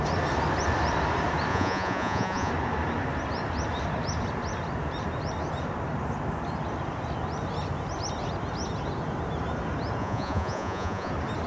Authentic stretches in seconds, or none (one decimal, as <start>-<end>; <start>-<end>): 0.0-1.5; 2.5-10.0; 11.1-11.5